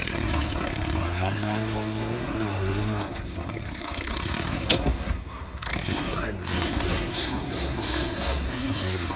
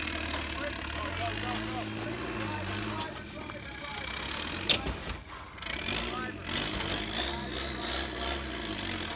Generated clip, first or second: first